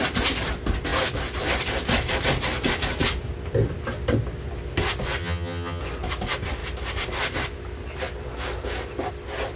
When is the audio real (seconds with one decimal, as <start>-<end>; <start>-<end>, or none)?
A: 0.0-5.2; 5.8-9.6